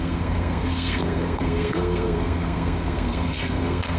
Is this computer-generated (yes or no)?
yes